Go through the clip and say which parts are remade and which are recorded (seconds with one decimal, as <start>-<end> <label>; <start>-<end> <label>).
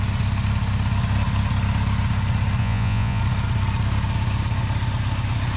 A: 0.0-2.6 recorded; 2.6-3.2 remade; 3.2-5.6 recorded